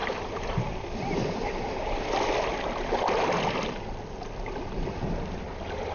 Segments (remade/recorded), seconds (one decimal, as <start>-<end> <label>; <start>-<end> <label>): 0.0-5.9 recorded